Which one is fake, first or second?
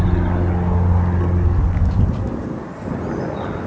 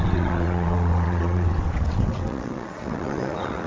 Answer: second